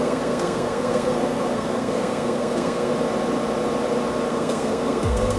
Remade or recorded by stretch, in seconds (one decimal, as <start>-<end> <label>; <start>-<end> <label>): 0.0-2.9 remade; 2.9-4.3 recorded; 4.3-5.4 remade